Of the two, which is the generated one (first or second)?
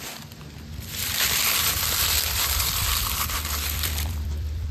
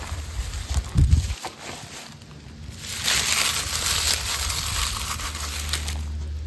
first